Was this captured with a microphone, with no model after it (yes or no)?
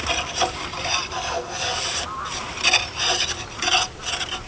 yes